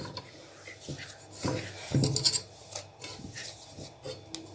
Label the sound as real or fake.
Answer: real